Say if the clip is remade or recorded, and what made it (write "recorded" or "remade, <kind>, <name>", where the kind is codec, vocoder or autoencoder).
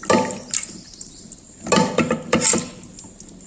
recorded